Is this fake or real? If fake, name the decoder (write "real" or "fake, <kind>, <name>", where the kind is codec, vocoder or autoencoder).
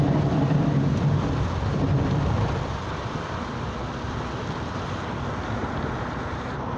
real